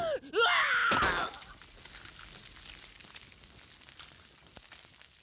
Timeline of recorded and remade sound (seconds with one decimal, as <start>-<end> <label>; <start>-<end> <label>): 0.0-5.2 recorded